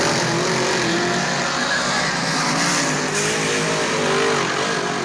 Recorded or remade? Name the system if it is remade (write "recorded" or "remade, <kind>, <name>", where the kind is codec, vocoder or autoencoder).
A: recorded